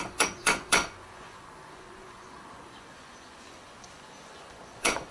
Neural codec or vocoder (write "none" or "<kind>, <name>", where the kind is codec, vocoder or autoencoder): vocoder, Vocos